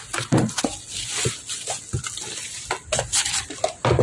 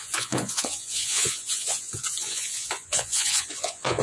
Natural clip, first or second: first